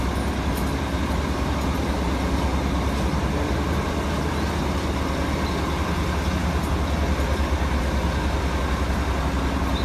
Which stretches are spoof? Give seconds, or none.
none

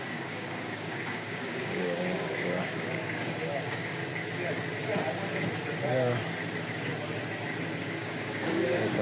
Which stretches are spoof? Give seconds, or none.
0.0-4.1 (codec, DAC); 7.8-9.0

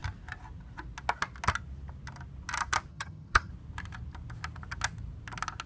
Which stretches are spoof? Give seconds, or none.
2.9-3.5 (vocoder, HiFi-GAN)

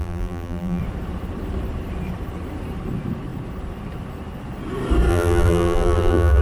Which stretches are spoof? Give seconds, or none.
0.0-0.8 (vocoder, BigVGAN v2); 5.1-6.4

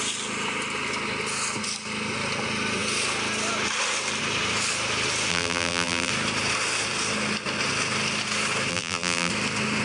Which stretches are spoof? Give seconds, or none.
5.3-6.1 (vocoder, BigVGAN v2); 8.7-9.3